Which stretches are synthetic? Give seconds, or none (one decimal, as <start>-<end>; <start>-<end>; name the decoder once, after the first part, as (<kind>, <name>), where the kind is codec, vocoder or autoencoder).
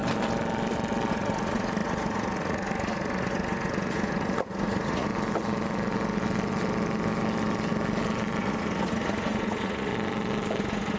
1.1-5.1 (vocoder, Vocos); 8.4-9.9; 10.6-11.0